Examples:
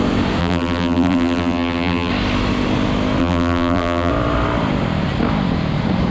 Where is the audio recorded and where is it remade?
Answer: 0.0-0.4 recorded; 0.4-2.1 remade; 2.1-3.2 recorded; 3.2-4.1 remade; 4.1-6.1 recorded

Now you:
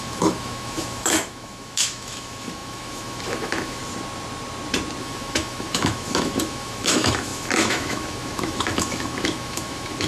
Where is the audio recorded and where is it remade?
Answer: 0.0-3.8 remade; 3.8-5.0 recorded; 5.0-10.1 remade

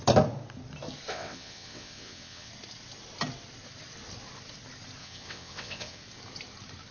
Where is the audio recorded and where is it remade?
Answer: 0.0-1.1 recorded; 1.1-2.5 remade; 2.5-5.0 recorded; 5.0-6.0 remade; 6.0-6.9 recorded